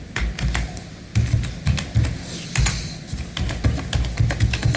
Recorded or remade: recorded